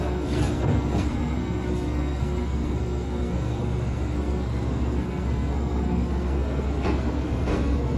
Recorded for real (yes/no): no